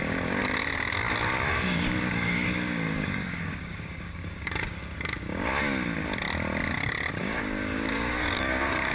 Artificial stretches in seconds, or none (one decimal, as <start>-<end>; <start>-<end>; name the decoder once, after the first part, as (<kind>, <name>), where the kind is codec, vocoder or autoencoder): 0.0-0.4 (codec, DAC); 1.5-5.5; 7.2-8.9